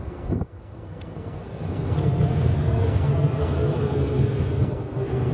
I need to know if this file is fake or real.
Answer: fake